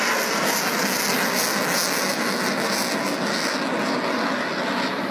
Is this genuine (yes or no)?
yes